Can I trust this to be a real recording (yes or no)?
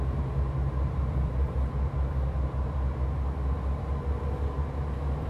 yes